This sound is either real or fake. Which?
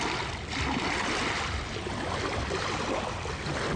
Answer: real